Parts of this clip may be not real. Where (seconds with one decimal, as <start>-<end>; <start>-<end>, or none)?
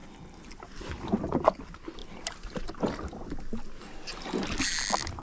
none